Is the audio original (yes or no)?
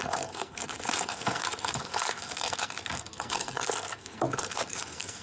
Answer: no